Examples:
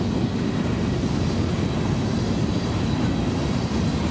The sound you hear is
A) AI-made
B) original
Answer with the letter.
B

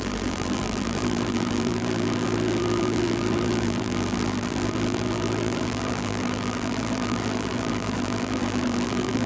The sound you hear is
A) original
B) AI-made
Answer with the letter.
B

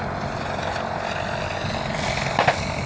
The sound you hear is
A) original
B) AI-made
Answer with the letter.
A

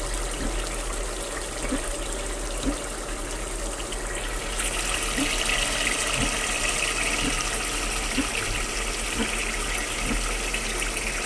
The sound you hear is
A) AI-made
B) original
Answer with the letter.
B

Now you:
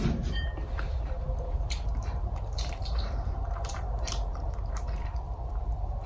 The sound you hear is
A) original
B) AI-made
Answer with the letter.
B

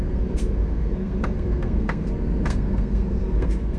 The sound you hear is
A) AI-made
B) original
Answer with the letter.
A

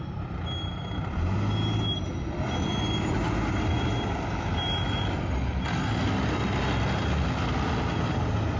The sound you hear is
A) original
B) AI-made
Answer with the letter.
A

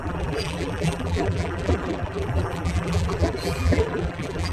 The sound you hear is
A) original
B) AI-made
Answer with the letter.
B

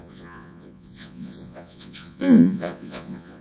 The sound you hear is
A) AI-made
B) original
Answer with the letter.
A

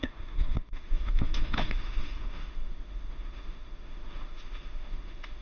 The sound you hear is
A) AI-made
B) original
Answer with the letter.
A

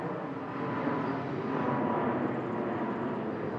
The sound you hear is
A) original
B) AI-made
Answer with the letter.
A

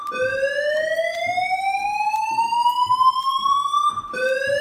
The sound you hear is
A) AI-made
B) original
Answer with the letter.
B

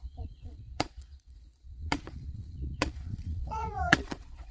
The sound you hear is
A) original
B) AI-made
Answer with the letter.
B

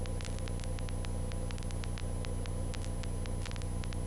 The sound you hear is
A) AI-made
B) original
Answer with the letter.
B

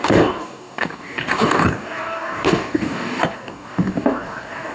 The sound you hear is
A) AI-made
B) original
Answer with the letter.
A